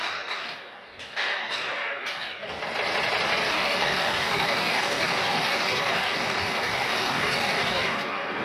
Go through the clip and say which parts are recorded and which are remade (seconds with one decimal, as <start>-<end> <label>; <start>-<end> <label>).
0.0-2.6 remade; 2.6-3.5 recorded; 3.5-8.4 remade